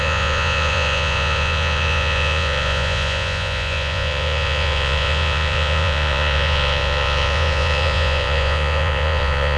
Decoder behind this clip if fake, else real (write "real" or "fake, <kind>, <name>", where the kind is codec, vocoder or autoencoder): fake, vocoder, Vocos